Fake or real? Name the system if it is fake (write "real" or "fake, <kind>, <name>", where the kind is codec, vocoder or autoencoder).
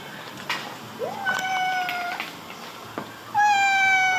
real